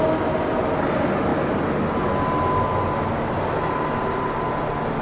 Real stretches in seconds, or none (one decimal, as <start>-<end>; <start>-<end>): 0.0-5.0